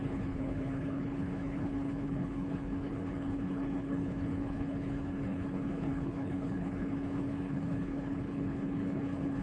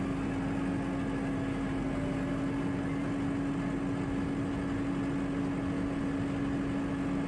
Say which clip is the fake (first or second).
first